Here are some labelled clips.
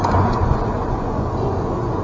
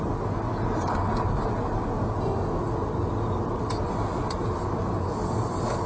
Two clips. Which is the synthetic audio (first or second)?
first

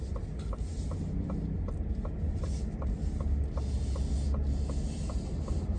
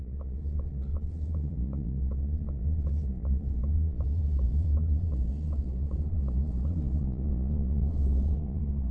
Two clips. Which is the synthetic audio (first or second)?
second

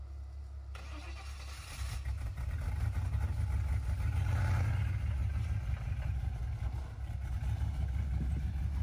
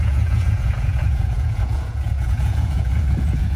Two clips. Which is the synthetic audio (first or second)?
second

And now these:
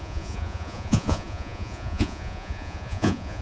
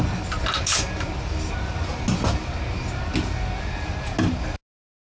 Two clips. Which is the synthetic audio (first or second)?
first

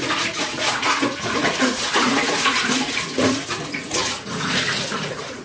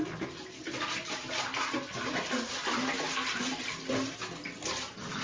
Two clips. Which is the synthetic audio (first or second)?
first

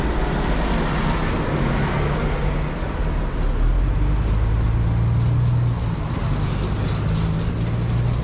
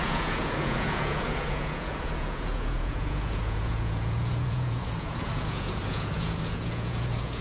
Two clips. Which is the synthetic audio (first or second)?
second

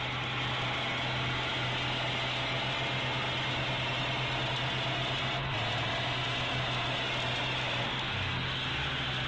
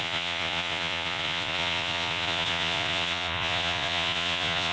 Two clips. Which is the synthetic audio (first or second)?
second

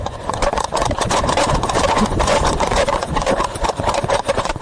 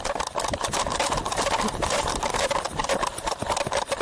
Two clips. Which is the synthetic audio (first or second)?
first